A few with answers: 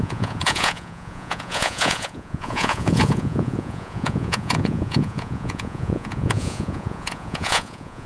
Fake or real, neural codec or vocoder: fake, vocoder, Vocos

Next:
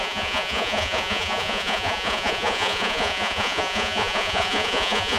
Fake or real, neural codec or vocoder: fake, vocoder, Vocos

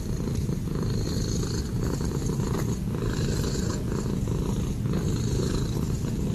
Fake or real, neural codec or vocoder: real